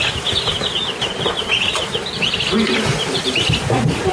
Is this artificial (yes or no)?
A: yes